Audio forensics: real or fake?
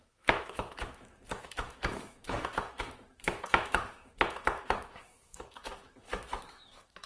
fake